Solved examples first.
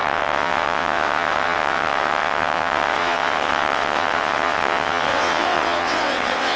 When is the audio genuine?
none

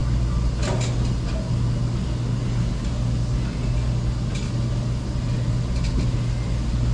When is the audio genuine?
0.0-6.9

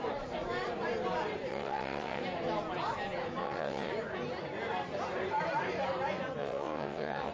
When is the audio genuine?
0.0-1.5; 2.2-3.4; 3.9-6.4

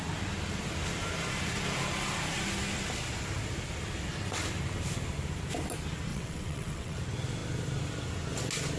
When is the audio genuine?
0.0-6.1; 7.0-8.8

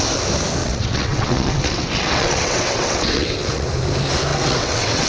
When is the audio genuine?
0.0-0.6; 3.7-4.3

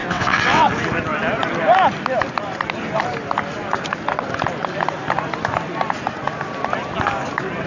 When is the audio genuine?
0.7-7.7

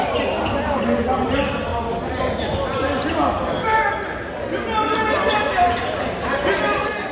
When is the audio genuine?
0.0-7.1

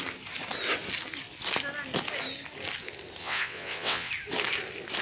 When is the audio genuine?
0.0-3.2; 4.1-5.0